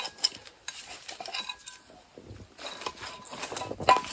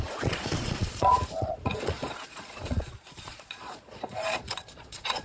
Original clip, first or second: first